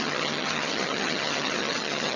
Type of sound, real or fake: fake